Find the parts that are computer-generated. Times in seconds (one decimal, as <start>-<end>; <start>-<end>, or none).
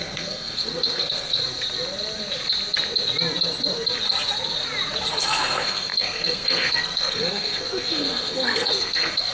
0.0-1.4; 5.1-9.3